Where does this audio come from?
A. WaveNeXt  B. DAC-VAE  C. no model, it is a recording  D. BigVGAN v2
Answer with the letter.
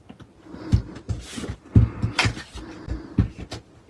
C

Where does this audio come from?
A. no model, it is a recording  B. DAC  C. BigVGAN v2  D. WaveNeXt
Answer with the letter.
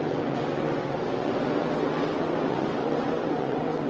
D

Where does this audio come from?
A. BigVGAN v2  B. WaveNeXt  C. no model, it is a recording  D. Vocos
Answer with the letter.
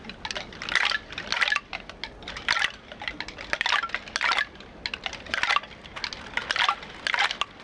C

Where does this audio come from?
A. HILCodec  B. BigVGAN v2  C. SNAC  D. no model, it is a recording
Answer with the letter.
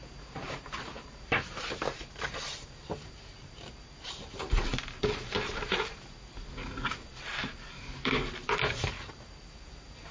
B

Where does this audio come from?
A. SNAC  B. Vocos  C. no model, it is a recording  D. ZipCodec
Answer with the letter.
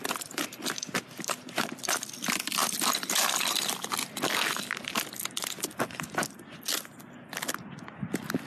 C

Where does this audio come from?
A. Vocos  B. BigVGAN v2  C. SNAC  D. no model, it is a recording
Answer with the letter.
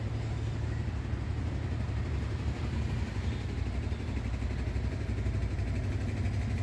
D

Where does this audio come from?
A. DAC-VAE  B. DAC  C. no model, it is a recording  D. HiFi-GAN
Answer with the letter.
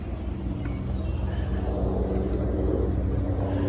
C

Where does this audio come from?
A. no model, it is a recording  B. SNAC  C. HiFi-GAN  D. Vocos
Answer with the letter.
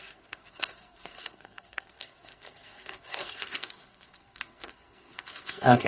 B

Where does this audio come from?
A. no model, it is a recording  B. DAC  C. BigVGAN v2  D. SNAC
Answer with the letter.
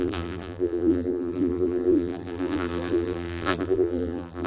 C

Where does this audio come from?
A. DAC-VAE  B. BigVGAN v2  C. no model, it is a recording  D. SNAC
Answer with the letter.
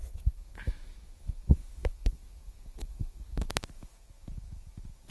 A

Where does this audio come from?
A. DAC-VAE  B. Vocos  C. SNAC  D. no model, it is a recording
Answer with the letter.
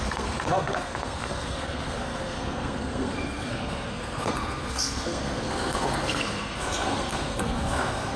C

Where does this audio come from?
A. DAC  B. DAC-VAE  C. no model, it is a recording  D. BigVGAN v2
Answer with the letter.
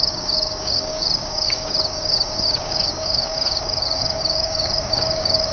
A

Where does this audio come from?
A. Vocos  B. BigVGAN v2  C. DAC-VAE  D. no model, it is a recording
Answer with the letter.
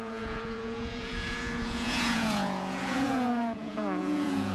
A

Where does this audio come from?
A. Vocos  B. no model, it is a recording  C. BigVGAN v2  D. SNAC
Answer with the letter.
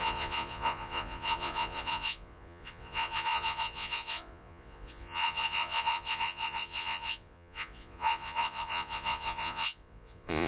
A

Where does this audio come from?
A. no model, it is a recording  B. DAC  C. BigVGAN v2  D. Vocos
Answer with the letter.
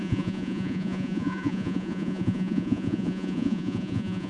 D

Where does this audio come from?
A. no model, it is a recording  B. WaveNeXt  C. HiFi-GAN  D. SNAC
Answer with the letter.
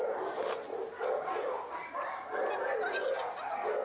A